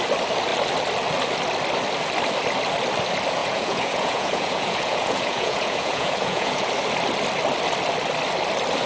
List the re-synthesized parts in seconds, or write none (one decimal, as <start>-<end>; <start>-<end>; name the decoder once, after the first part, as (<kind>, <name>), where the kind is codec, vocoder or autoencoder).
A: 3.4-6.7 (vocoder, Vocos)